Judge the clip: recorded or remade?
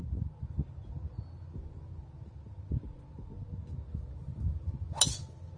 recorded